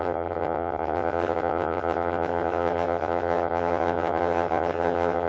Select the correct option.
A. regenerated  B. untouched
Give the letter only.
A